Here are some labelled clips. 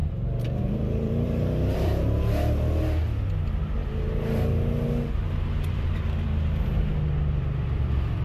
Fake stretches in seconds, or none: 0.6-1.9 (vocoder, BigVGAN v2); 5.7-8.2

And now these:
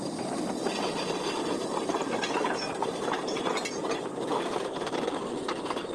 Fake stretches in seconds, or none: 1.7-5.2 (vocoder, BigVGAN v2)

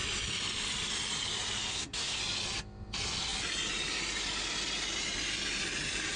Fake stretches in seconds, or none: 1.7-2.2 (codec, SNAC)

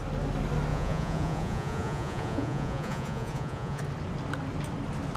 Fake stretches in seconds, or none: 0.7-3.8 (vocoder, Vocos)

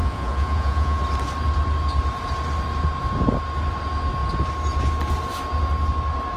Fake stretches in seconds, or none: 0.0-1.0 (vocoder, Vocos)